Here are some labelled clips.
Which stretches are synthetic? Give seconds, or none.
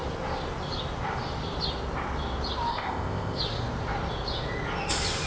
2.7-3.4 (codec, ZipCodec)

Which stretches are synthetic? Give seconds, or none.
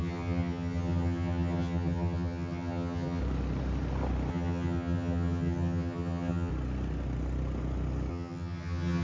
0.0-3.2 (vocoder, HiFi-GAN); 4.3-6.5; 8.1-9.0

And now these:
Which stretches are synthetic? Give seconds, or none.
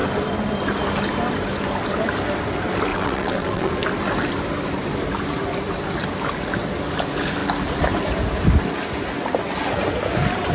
2.9-3.7 (vocoder, WaveNeXt)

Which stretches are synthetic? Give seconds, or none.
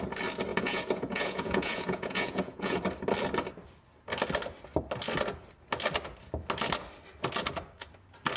0.5-2.8 (vocoder, Vocos)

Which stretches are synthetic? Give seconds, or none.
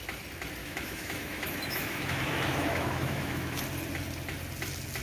0.6-3.6 (autoencoder, DAC-VAE)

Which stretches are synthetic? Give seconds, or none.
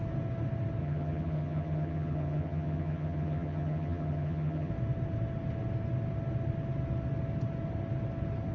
0.8-4.7 (vocoder, HiFi-GAN)